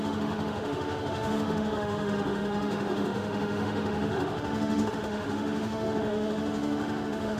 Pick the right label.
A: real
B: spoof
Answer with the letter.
B